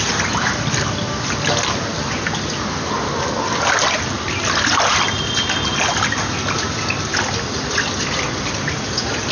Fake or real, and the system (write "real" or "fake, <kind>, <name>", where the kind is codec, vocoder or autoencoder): real